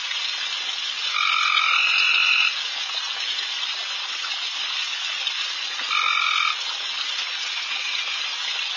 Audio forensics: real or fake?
real